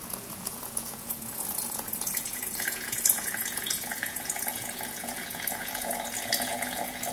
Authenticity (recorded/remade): remade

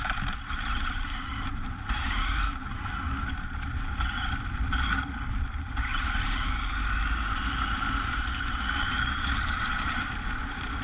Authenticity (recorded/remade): remade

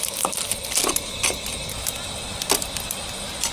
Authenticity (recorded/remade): recorded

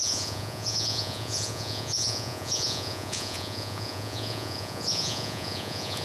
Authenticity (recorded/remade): remade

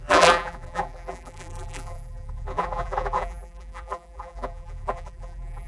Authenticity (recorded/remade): remade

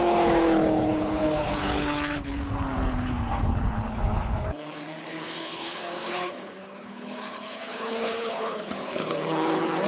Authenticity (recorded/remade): remade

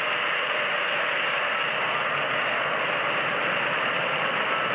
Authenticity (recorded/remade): recorded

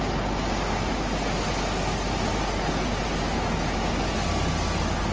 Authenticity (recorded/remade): recorded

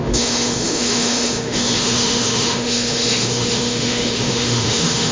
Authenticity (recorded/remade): remade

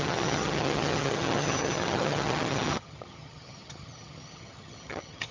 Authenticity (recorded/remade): remade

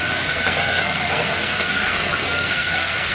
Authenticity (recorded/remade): remade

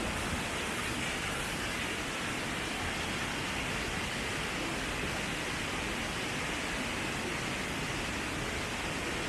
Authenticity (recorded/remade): recorded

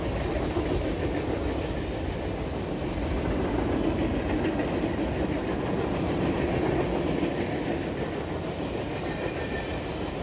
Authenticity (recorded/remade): recorded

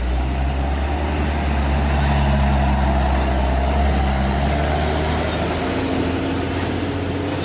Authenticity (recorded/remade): recorded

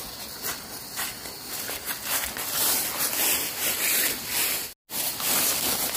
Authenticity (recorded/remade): recorded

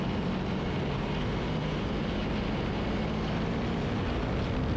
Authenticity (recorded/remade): recorded